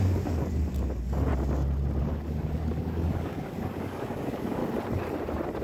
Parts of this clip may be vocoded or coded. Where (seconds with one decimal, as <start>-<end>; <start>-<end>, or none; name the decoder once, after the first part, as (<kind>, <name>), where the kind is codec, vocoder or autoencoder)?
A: 0.0-1.3 (codec, DAC); 2.0-4.6